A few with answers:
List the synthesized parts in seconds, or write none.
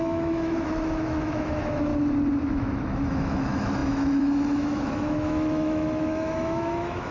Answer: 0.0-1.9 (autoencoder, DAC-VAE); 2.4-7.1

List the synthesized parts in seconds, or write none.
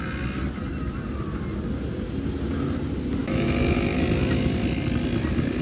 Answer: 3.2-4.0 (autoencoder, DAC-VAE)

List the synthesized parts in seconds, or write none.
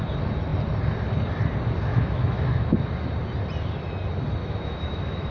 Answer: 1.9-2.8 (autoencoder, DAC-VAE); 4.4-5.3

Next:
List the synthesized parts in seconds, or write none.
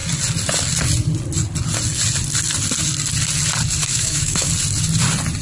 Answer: 3.8-4.5 (autoencoder, DAC-VAE)